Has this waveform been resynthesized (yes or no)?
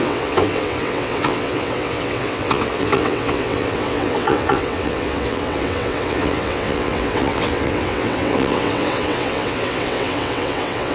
yes